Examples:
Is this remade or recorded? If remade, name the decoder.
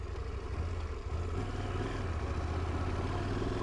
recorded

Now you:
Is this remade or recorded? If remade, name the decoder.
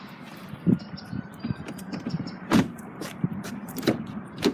remade, vocoder, BigVGAN v2